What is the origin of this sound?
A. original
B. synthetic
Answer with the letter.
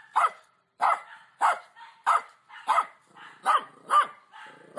A